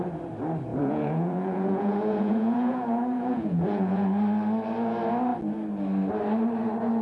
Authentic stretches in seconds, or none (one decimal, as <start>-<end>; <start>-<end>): 0.0-0.7; 4.2-7.0